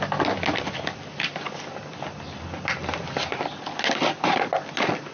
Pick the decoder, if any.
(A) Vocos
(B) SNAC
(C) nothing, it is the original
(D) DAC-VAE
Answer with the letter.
C